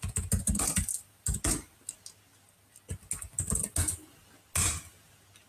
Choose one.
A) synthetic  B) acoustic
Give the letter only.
B